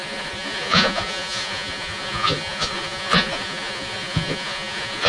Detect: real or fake fake